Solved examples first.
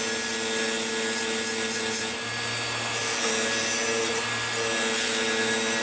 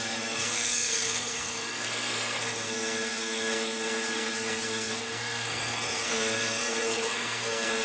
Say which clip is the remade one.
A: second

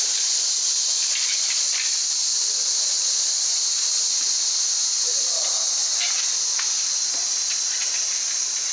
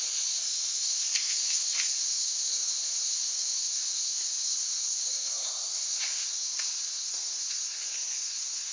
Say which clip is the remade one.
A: second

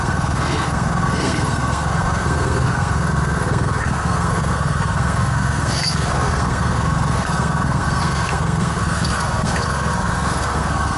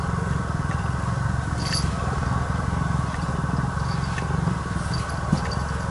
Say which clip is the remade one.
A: first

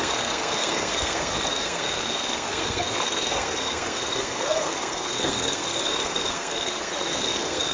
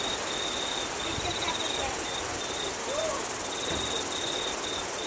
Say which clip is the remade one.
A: first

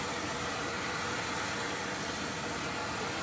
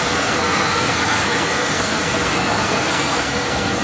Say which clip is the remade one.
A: second